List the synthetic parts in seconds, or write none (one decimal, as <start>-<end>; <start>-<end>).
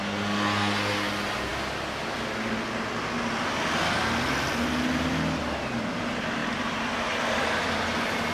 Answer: none